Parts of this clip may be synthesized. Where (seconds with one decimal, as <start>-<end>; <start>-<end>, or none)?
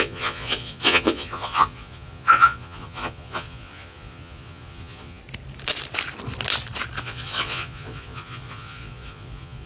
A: 0.0-5.2; 7.0-9.7